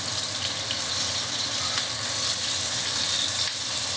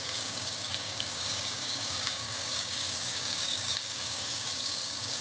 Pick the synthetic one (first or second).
second